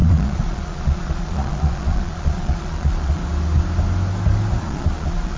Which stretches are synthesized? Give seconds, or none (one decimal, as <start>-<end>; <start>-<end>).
0.0-3.2; 4.6-5.4